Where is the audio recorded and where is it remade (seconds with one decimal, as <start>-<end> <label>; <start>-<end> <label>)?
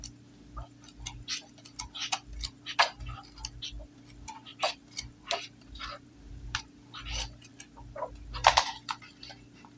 0.0-4.5 recorded; 4.5-6.6 remade; 6.6-9.8 recorded